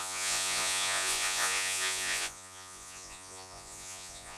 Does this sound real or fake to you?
fake